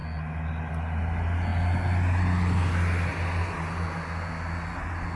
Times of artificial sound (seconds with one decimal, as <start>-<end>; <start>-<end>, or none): none